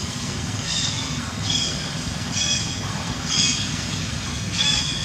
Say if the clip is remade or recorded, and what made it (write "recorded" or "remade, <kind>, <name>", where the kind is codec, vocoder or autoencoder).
remade, codec, SNAC